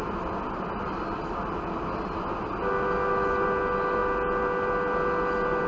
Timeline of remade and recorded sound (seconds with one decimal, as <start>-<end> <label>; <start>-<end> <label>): 0.0-5.7 recorded